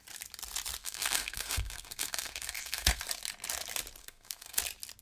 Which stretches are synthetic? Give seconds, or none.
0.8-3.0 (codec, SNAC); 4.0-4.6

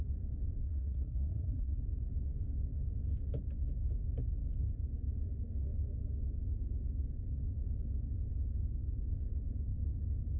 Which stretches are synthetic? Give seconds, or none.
0.6-1.8 (codec, SNAC)

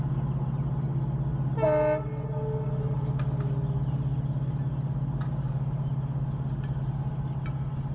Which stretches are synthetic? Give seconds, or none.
none

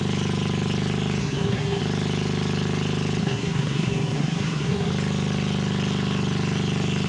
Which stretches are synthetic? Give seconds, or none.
1.2-1.8 (codec, SNAC); 3.2-4.9

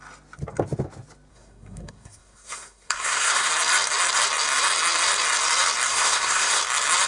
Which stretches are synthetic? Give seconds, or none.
1.3-3.5 (codec, SNAC); 5.9-6.6